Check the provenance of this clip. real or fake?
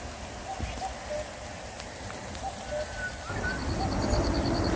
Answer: real